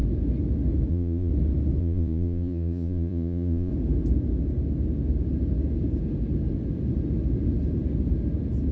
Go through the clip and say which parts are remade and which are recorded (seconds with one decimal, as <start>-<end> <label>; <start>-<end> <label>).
0.0-0.9 recorded; 0.9-1.3 remade; 1.3-1.8 recorded; 1.8-3.7 remade; 3.7-8.7 recorded